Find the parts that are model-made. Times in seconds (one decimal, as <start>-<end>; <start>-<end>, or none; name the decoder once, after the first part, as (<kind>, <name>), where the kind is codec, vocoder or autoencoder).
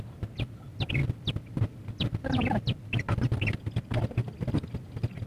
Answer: none